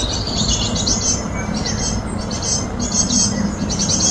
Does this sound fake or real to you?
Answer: real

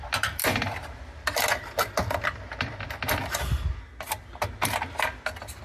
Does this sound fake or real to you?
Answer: real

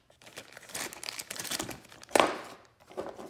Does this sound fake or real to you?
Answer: fake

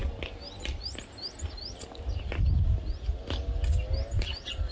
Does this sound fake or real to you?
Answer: real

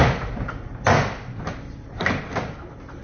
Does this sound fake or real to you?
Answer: real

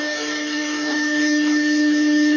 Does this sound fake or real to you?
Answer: fake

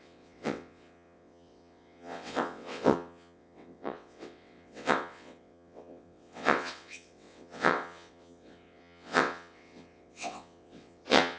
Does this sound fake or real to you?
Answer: fake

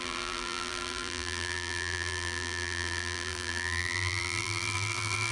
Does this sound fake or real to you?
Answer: fake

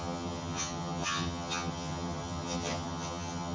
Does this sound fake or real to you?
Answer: fake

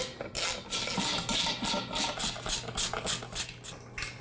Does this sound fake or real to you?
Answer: real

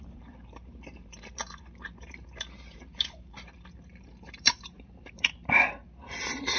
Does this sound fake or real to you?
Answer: fake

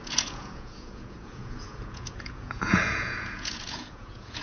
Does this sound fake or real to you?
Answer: fake